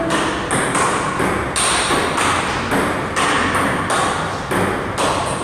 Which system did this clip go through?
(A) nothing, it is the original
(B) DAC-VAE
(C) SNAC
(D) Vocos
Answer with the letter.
A